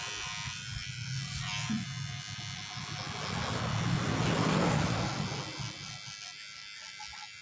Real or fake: real